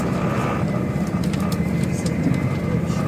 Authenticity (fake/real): fake